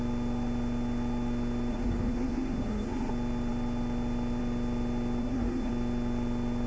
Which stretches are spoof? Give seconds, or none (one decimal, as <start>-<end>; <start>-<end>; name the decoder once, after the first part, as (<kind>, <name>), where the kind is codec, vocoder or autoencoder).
1.7-3.1 (codec, SNAC); 5.2-5.7